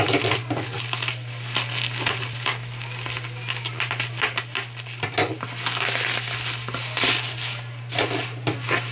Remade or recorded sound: recorded